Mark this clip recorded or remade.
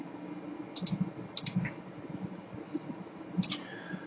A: recorded